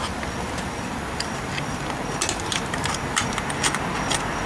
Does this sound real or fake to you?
real